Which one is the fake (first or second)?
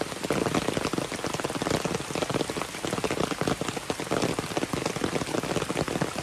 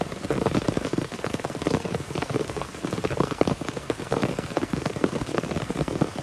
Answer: second